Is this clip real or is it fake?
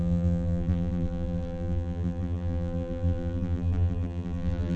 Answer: fake